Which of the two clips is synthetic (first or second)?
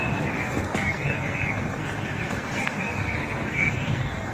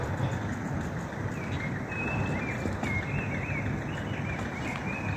first